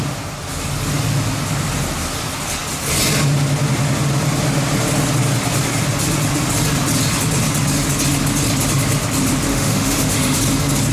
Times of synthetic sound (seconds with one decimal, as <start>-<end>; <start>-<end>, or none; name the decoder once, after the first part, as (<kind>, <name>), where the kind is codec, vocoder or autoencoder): 9.5-10.4 (autoencoder, DAC-VAE)